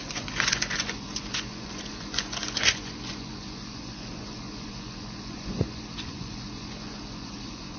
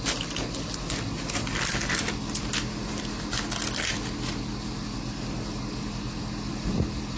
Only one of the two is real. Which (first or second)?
second